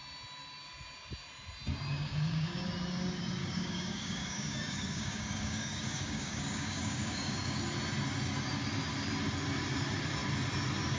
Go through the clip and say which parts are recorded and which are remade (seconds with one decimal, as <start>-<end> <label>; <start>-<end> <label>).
0.0-1.9 recorded; 1.9-2.6 remade; 2.6-3.4 recorded; 3.4-7.6 remade; 7.6-11.0 recorded

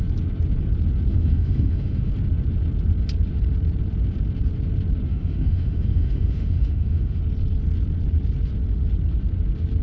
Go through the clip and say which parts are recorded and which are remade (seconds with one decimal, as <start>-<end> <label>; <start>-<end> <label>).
0.0-1.1 recorded; 1.1-2.1 remade; 2.1-5.1 recorded; 5.1-7.2 remade; 7.2-9.8 recorded